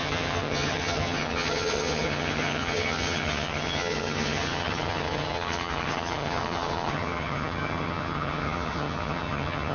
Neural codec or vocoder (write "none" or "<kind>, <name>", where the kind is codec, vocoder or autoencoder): vocoder, HiFi-GAN